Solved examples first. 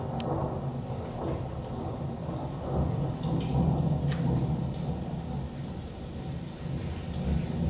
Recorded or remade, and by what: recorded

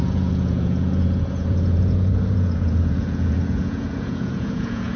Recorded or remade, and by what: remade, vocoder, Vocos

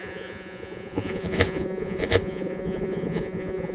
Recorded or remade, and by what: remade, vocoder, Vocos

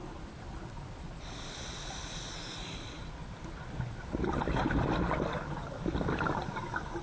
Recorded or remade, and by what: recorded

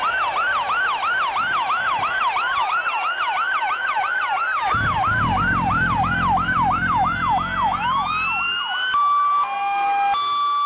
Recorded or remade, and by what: recorded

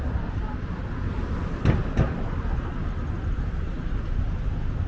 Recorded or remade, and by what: recorded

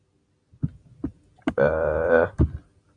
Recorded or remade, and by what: recorded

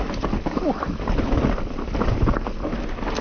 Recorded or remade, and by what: recorded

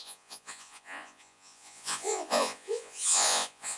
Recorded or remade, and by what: remade, vocoder, Vocos